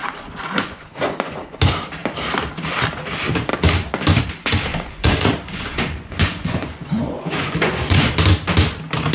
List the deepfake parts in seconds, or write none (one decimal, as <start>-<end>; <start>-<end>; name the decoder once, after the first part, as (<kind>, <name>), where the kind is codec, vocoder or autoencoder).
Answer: 0.0-1.6 (vocoder, Vocos); 4.7-8.1